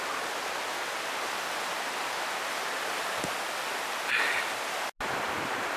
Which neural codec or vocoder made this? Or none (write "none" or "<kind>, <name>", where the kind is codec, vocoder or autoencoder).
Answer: none